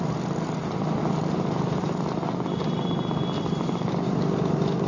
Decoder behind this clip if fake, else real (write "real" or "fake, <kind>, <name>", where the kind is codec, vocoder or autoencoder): real